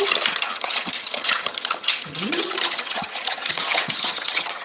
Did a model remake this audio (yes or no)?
yes